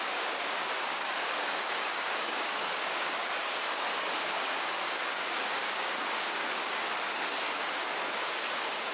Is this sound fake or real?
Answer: fake